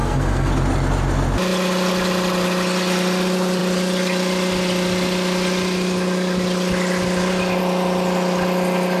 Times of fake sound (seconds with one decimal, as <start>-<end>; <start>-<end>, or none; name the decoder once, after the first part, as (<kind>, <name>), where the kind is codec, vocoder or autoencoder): 0.0-0.5 (codec, SNAC)